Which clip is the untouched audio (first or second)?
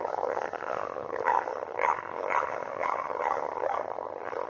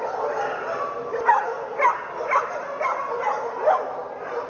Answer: second